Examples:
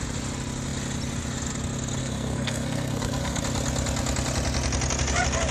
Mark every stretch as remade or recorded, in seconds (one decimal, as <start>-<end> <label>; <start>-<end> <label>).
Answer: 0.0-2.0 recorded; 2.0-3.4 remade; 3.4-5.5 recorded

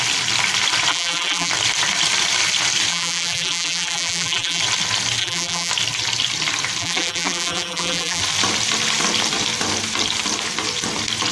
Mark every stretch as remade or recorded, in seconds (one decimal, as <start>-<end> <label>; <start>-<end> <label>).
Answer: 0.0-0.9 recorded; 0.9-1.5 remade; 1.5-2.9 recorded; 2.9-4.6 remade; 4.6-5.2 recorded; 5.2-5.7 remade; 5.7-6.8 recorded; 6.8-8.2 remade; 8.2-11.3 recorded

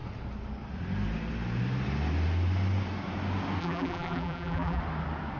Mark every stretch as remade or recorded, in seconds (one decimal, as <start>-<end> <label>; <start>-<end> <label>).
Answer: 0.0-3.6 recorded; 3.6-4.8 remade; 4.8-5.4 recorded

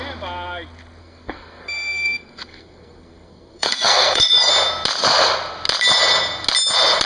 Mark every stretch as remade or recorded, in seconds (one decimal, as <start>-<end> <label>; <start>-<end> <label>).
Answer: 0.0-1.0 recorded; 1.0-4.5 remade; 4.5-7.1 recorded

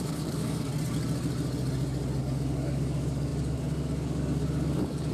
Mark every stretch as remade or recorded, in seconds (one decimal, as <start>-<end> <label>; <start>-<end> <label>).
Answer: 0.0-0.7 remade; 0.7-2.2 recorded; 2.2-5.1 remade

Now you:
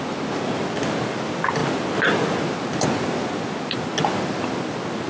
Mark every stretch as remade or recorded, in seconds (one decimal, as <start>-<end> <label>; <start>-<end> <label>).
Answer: 0.0-5.1 recorded